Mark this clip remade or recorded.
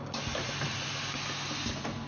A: recorded